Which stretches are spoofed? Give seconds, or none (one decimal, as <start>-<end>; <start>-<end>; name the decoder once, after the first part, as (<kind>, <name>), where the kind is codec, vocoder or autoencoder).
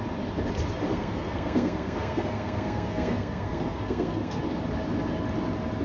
0.9-4.4 (codec, SNAC)